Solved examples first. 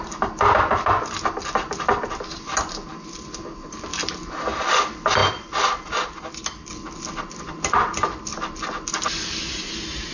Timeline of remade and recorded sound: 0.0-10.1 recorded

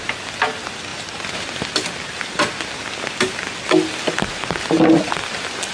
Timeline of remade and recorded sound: 0.0-5.7 recorded

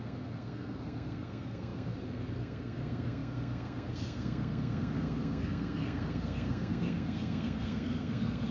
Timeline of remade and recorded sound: 0.0-8.5 remade